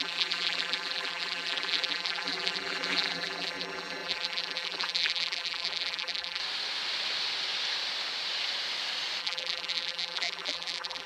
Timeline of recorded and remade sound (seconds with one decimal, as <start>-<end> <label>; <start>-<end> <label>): 0.0-6.4 remade; 6.4-9.2 recorded; 9.2-11.1 remade